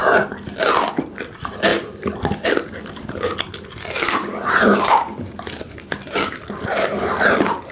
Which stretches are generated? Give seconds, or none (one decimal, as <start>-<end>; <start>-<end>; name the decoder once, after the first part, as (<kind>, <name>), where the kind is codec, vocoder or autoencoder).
none